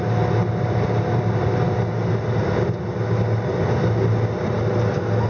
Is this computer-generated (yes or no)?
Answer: no